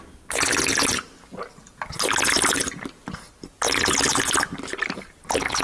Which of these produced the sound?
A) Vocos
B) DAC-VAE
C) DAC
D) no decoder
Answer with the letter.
D